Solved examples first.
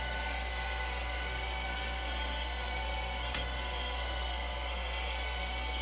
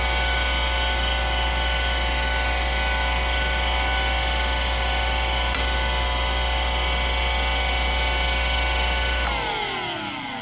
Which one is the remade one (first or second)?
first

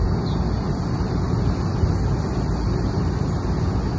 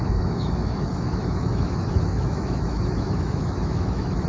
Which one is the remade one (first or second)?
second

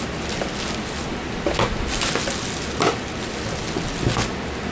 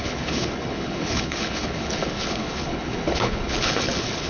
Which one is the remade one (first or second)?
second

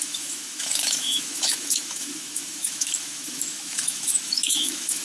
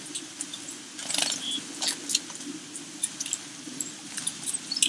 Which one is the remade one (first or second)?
first